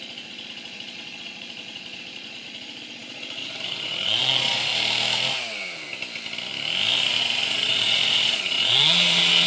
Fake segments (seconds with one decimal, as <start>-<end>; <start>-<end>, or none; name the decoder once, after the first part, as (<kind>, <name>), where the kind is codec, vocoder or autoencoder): 0.0-4.7 (vocoder, Vocos); 7.2-9.5